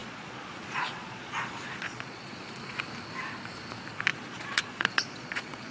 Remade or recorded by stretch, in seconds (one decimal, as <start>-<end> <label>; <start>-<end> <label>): 0.0-2.8 remade; 2.8-4.1 recorded; 4.1-5.7 remade